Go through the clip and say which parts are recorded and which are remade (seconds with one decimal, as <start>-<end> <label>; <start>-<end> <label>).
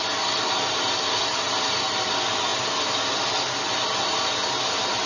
0.0-5.1 recorded